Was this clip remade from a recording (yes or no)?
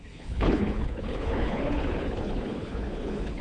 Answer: yes